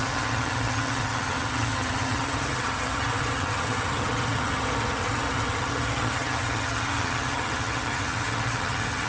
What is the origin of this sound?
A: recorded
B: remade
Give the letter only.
B